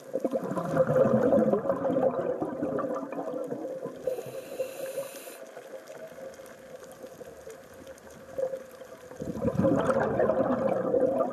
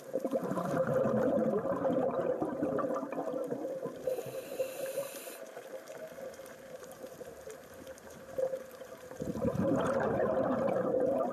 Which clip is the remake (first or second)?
second